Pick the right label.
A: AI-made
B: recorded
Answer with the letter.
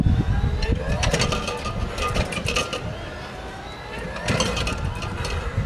B